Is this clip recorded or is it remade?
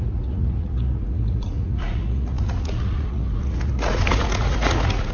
remade